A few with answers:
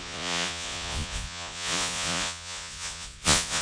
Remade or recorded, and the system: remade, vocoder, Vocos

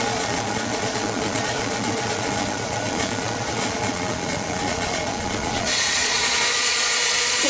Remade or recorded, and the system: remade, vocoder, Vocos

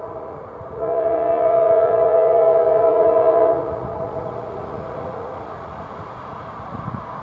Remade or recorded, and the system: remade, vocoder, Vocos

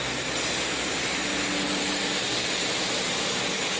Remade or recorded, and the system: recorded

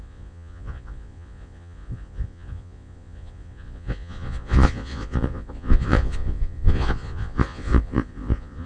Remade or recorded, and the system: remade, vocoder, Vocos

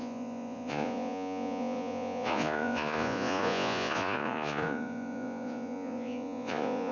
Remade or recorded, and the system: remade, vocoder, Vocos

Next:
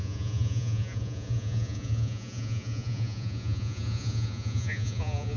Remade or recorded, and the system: remade, vocoder, Vocos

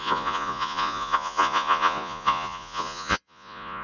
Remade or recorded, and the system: remade, vocoder, Vocos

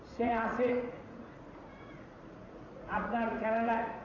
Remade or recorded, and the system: remade, vocoder, Vocos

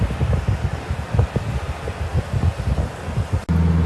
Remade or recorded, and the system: recorded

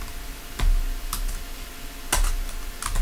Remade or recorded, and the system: recorded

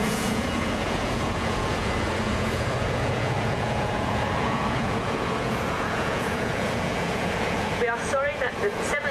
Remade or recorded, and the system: remade, vocoder, Vocos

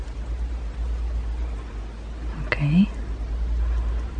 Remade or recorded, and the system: recorded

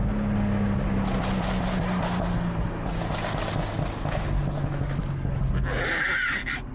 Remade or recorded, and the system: recorded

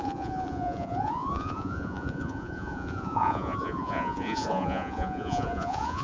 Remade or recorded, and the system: remade, vocoder, Vocos